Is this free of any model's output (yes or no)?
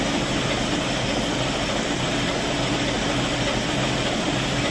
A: yes